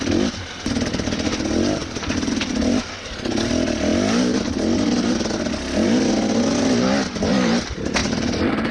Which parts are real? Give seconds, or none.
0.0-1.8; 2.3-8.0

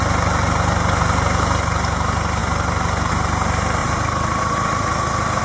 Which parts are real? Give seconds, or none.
0.0-3.8

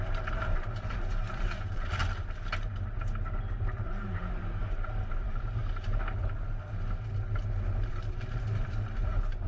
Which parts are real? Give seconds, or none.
2.0-3.3; 5.6-7.9